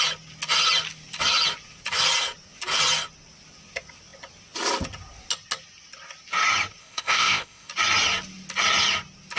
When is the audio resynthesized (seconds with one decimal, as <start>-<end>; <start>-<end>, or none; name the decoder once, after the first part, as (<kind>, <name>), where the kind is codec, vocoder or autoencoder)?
6.8-7.7 (codec, ZipCodec)